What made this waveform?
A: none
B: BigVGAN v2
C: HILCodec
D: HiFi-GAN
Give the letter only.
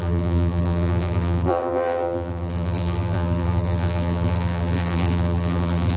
B